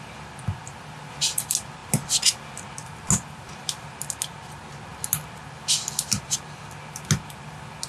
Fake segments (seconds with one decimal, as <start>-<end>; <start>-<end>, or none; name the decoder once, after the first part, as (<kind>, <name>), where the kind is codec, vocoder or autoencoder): none